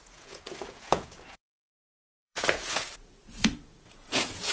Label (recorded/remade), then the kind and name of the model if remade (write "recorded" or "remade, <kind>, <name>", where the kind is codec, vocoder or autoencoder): remade, vocoder, Vocos